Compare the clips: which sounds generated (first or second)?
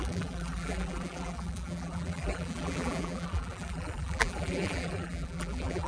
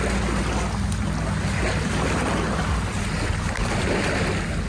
first